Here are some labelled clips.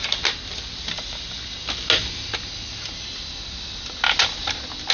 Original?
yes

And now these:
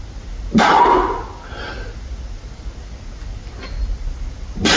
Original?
yes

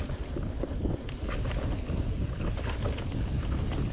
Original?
no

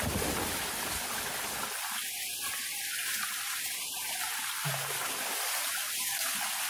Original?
yes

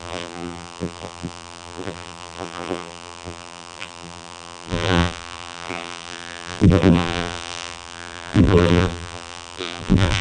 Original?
no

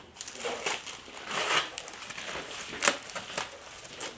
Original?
yes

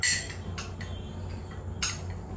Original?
yes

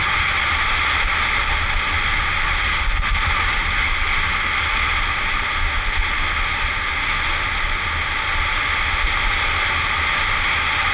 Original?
yes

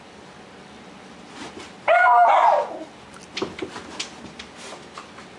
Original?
yes